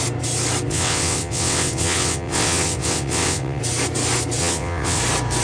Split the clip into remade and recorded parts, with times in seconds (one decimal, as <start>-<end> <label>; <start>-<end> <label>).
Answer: 0.0-0.7 recorded; 0.7-3.6 remade; 3.6-4.4 recorded; 4.4-5.0 remade; 5.0-5.4 recorded